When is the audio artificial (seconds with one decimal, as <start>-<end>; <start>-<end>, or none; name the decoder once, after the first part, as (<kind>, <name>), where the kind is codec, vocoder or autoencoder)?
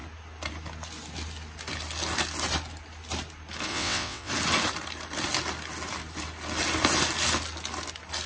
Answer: 3.7-4.3 (vocoder, WaveNeXt)